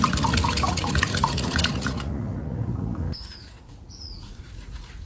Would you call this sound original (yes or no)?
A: no